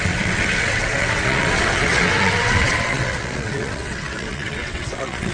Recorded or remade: remade